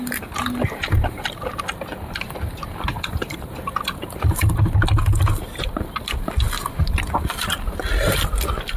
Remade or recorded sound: recorded